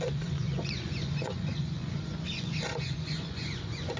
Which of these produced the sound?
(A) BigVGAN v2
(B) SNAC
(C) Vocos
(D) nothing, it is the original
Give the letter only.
C